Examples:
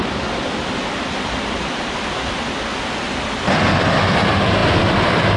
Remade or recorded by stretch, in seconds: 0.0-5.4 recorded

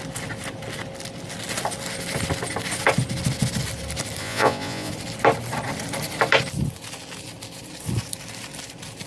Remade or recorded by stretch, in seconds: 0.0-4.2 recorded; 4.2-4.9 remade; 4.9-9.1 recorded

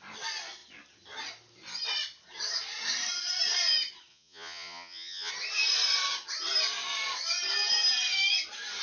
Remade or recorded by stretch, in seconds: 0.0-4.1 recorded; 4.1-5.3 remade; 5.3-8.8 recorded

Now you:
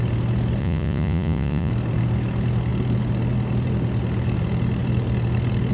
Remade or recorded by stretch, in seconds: 0.0-0.6 recorded; 0.6-1.7 remade; 1.7-5.7 recorded

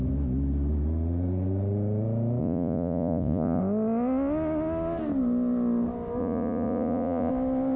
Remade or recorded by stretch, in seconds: 0.0-2.4 recorded; 2.4-3.6 remade; 3.6-6.2 recorded; 6.2-7.3 remade; 7.3-7.8 recorded

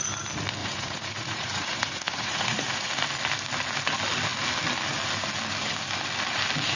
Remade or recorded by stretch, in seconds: 0.0-0.6 recorded; 0.6-2.9 remade; 2.9-6.8 recorded

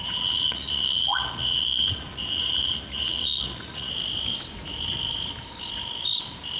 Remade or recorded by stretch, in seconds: 0.0-3.9 remade; 3.9-6.6 recorded